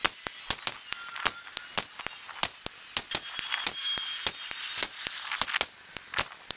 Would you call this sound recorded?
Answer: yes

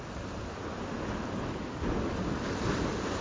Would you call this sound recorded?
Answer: yes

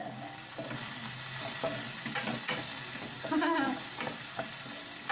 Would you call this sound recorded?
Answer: yes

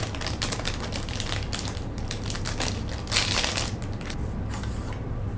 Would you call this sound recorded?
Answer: yes